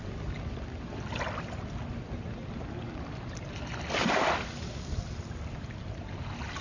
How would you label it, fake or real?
real